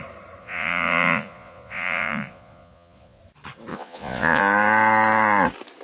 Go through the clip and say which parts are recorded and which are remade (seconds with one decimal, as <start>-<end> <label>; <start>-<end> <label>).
0.0-0.4 recorded; 0.4-3.2 remade; 3.2-3.7 recorded; 3.7-4.4 remade; 4.4-5.8 recorded